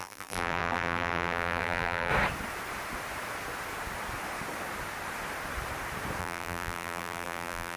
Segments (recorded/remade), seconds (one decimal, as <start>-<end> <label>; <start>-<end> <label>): 0.0-2.1 remade; 2.1-6.2 recorded; 6.2-7.8 remade